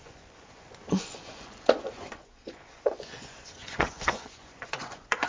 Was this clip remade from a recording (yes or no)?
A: yes